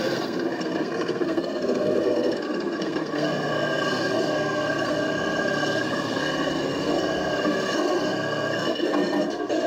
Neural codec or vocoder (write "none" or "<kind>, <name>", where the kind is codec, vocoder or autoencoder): codec, SNAC